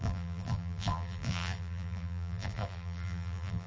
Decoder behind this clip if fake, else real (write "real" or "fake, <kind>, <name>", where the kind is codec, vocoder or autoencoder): fake, vocoder, BigVGAN v2